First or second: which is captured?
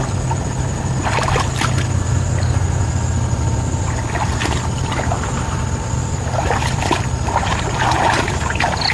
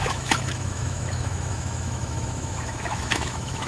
first